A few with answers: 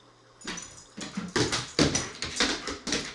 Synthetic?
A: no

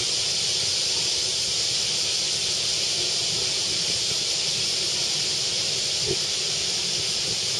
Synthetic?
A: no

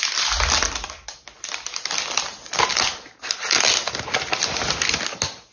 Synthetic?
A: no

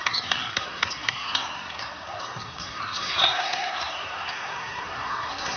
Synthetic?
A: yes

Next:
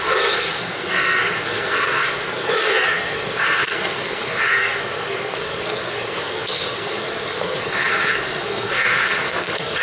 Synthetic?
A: yes